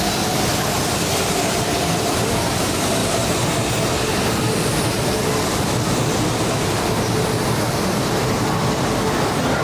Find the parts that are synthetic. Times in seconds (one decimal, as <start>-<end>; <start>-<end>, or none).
none